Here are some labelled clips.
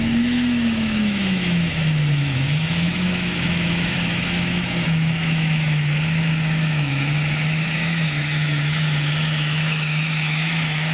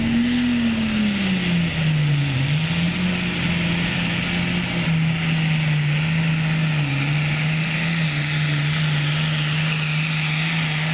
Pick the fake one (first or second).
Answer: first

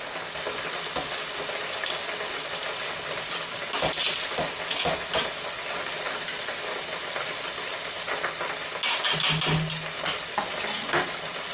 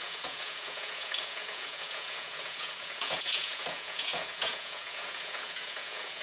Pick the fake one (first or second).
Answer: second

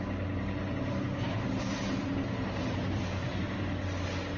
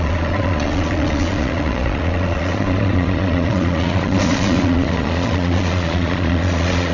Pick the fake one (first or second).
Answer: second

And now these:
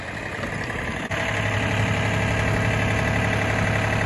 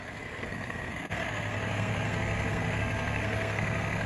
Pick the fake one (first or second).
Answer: second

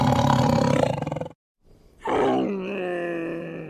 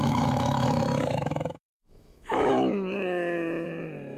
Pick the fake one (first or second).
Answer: second